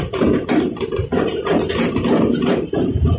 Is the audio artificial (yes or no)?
yes